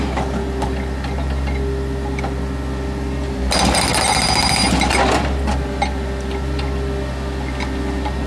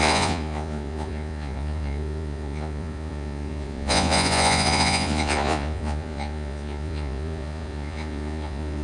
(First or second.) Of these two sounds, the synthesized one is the second